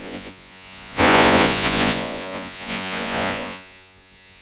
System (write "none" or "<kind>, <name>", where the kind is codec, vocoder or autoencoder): vocoder, Vocos